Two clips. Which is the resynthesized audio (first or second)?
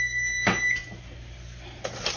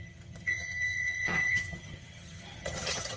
second